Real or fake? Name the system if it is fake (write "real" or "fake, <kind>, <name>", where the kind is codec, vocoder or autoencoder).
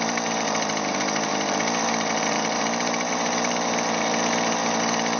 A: fake, vocoder, BigVGAN v2